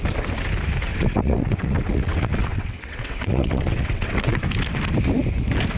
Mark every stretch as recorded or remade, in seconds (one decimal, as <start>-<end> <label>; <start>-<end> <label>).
0.0-0.9 recorded; 0.9-4.4 remade; 4.4-5.8 recorded